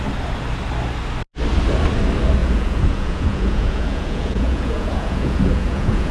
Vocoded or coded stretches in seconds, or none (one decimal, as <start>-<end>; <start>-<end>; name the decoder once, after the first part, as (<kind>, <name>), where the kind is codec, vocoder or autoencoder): 2.4-6.1 (vocoder, Vocos)